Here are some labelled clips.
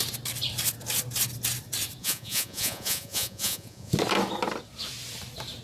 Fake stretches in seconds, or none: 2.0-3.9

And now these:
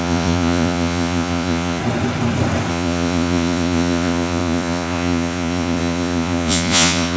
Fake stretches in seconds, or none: 0.0-1.8; 2.7-7.2

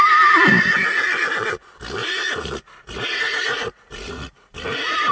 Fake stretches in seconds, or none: 2.0-5.1

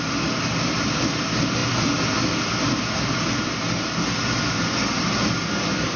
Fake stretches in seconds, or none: none

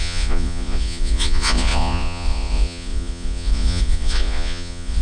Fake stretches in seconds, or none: 0.0-5.0

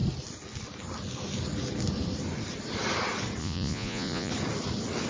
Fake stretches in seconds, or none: 3.4-4.3

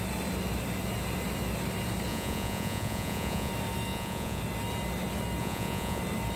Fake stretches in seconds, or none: 2.1-3.5; 3.9-4.4; 5.4-6.0